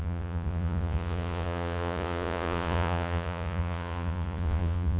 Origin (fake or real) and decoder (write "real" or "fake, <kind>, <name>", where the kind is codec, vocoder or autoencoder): fake, vocoder, Vocos